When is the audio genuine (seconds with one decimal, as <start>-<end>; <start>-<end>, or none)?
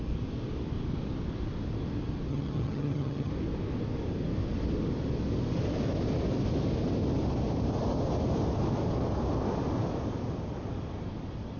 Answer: 0.0-2.3; 3.3-11.6